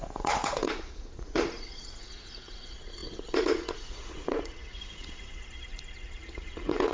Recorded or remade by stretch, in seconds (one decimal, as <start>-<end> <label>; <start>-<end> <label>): 0.0-6.9 remade